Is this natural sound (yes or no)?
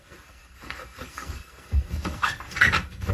no